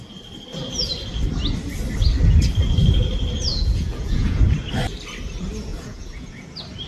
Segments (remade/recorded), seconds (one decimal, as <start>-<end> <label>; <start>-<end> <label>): 0.0-3.5 recorded; 3.5-4.4 remade; 4.4-5.7 recorded; 5.7-6.5 remade; 6.5-6.9 recorded